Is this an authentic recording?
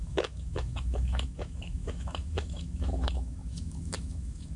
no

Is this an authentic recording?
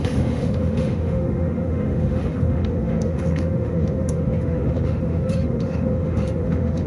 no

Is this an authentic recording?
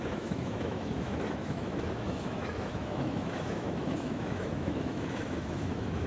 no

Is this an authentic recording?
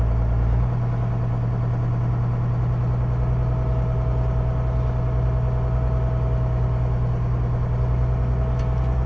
yes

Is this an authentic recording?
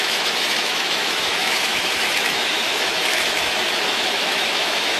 no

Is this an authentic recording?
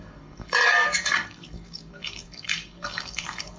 no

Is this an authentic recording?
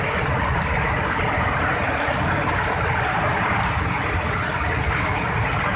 yes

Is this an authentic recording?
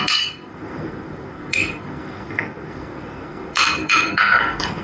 no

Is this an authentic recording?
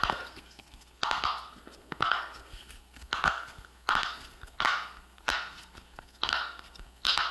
no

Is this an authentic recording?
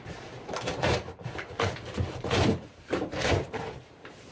no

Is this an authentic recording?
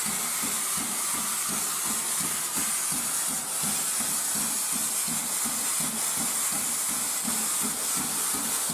yes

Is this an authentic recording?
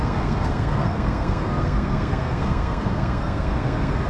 no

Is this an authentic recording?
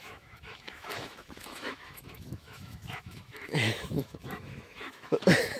no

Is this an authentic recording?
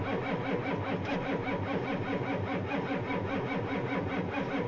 yes